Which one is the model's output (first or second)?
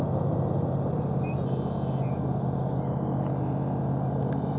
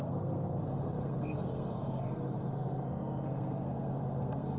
second